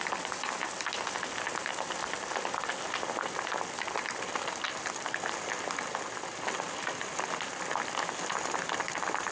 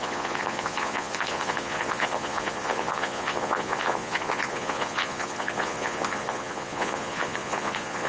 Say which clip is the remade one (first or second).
second